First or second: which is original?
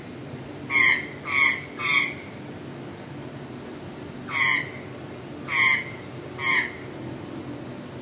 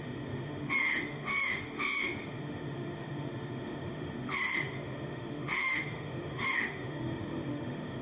first